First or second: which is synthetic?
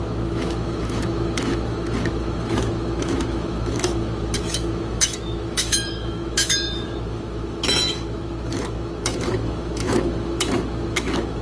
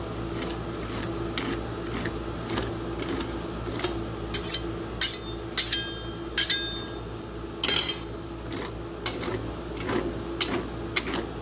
first